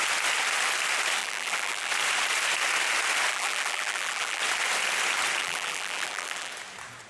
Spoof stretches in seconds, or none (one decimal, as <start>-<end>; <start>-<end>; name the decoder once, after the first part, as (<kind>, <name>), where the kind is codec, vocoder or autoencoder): 1.2-1.9 (vocoder, BigVGAN v2); 3.3-4.4; 5.4-6.5